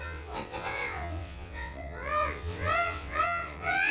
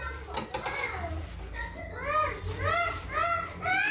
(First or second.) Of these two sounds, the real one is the second